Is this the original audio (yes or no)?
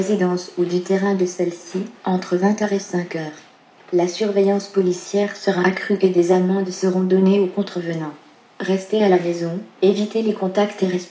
yes